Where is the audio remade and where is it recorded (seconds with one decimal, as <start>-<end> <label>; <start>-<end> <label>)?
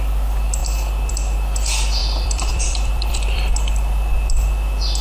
0.0-2.0 recorded; 2.0-3.5 remade; 3.5-5.0 recorded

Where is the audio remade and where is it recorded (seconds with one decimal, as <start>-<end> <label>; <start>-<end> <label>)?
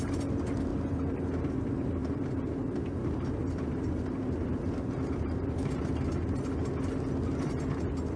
0.0-0.7 recorded; 0.7-1.2 remade; 1.2-2.0 recorded; 2.0-5.8 remade; 5.8-8.2 recorded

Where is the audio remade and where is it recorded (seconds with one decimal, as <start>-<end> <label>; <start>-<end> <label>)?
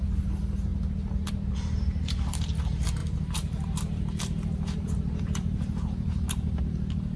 0.0-3.0 recorded; 3.0-6.6 remade; 6.6-7.2 recorded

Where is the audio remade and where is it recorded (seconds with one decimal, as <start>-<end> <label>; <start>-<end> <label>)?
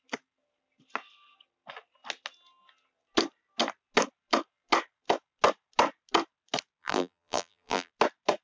0.0-6.8 recorded; 6.8-7.9 remade; 7.9-8.4 recorded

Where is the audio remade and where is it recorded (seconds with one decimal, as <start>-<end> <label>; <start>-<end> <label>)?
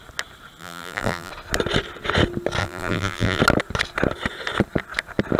0.0-0.6 recorded; 0.6-1.3 remade; 1.3-2.6 recorded; 2.6-3.4 remade; 3.4-5.4 recorded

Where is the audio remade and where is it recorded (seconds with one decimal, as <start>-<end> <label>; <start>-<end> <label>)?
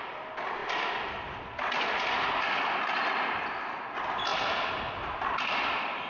0.0-4.3 recorded; 4.3-6.1 remade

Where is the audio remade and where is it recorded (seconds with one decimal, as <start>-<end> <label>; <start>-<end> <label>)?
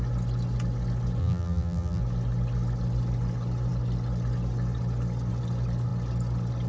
0.0-1.2 recorded; 1.2-2.0 remade; 2.0-6.7 recorded